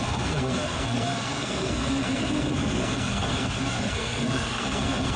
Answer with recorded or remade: remade